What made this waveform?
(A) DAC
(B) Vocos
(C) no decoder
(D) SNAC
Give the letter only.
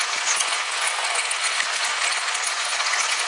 B